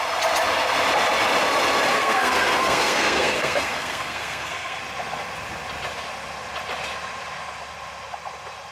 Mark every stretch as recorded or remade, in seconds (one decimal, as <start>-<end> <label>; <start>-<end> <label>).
0.0-1.9 recorded; 1.9-4.8 remade; 4.8-8.7 recorded